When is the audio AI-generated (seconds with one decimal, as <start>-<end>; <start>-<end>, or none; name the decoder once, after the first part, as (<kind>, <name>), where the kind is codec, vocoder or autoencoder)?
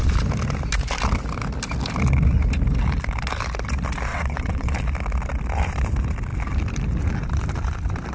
4.1-4.7 (vocoder, WaveNeXt)